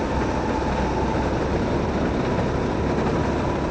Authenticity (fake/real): real